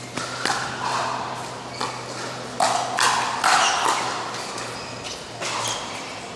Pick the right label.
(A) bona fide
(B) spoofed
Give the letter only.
A